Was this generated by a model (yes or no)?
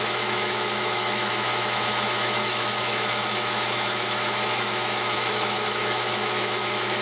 yes